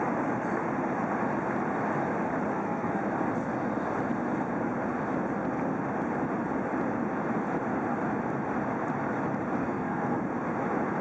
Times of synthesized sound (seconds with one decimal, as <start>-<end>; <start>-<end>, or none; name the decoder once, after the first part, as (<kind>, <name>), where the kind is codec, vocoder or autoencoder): 2.5-3.0 (codec, SNAC); 9.6-10.2

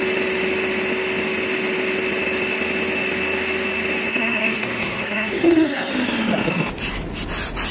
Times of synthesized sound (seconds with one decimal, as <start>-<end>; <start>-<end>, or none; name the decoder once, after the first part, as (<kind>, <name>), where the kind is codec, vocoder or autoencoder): 4.1-5.9 (codec, SNAC)

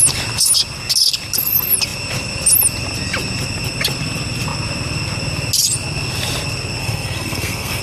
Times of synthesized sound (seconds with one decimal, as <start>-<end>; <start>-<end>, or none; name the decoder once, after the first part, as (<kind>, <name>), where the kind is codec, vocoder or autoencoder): 6.8-7.8 (codec, SNAC)

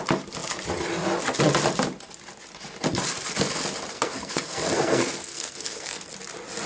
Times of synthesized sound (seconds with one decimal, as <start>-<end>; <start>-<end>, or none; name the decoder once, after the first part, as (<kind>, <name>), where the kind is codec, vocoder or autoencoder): 3.9-6.1 (codec, SNAC)

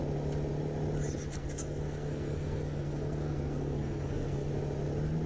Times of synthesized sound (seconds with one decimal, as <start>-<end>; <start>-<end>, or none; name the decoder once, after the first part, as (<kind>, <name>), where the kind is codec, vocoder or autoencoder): 1.3-4.5 (codec, SNAC)

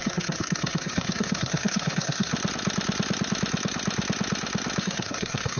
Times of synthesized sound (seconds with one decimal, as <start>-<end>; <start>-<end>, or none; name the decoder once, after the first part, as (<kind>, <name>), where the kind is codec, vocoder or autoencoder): 0.0-2.3 (codec, SNAC); 4.8-5.6